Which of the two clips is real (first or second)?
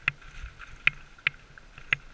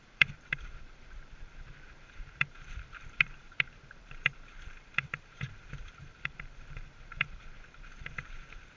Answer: first